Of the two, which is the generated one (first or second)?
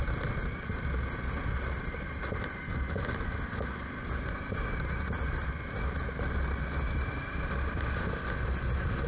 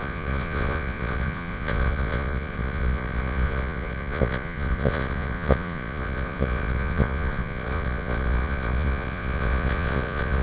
second